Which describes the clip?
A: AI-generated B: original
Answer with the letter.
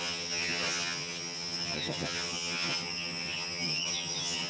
A